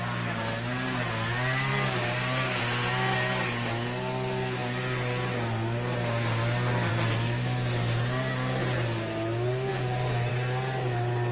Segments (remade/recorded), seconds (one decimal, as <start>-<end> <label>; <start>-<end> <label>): 0.0-9.7 recorded; 9.7-10.3 remade; 10.3-11.3 recorded